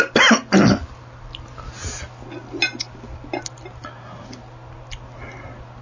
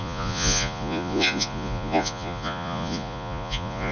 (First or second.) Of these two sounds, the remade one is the second